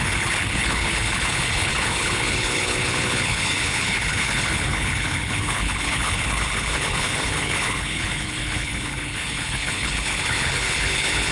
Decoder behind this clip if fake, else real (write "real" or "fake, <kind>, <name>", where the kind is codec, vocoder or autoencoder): fake, codec, HILCodec